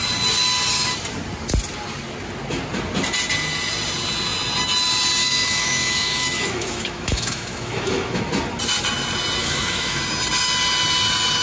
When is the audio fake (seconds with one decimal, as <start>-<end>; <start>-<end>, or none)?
5.2-8.2; 9.4-10.0